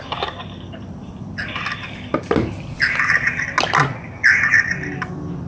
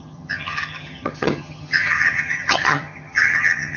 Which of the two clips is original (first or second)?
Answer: first